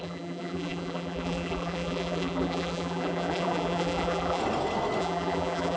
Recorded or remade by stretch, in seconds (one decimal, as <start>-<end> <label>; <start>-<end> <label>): 0.0-4.4 remade; 4.4-5.0 recorded; 5.0-5.8 remade